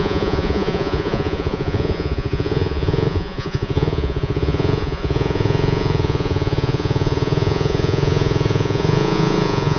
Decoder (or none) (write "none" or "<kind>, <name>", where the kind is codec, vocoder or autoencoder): vocoder, Vocos